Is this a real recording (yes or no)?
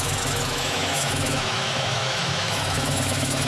no